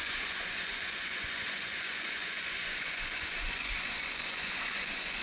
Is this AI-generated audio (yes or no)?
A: yes